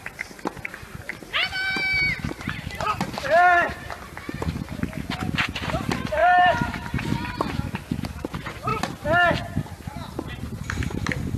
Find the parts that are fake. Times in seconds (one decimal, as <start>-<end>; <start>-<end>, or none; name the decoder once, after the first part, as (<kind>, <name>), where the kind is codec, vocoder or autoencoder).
6.2-6.9 (vocoder, BigVGAN v2)